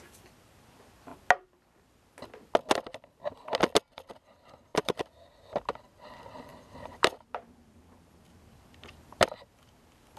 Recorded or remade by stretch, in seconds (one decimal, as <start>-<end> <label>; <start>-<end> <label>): 0.0-4.7 recorded; 4.7-5.3 remade; 5.3-6.5 recorded; 6.5-8.4 remade; 8.4-10.2 recorded